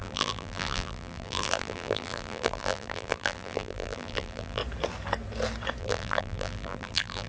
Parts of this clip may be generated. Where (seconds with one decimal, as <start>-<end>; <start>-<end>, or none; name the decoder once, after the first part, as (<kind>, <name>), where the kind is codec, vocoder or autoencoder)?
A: 0.0-4.6 (vocoder, BigVGAN v2); 5.8-7.3